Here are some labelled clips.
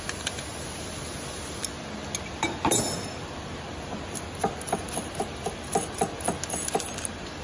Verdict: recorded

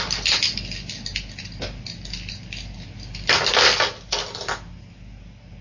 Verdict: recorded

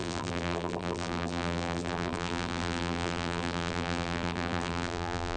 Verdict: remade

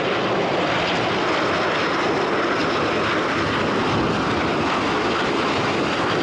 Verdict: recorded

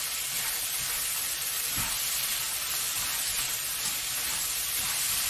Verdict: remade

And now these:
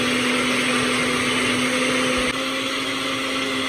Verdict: recorded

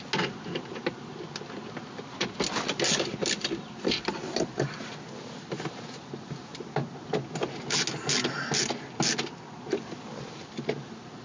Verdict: recorded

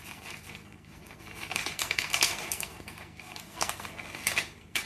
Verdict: remade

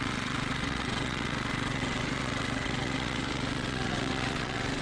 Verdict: remade